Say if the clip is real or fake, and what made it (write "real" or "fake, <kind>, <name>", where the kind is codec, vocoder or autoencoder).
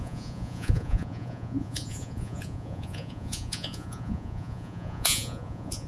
fake, vocoder, Vocos